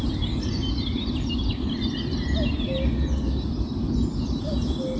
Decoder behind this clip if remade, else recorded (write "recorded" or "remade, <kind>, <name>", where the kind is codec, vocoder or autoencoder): recorded